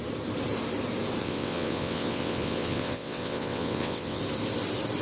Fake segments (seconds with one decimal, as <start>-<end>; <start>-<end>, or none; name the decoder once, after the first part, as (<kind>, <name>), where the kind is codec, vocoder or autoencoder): 1.2-4.2 (vocoder, WaveNeXt)